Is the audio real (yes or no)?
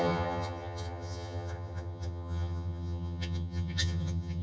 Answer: no